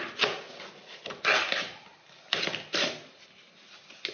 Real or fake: real